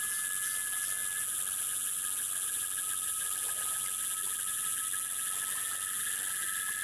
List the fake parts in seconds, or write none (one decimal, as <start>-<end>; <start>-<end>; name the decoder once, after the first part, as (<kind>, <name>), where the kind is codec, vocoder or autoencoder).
none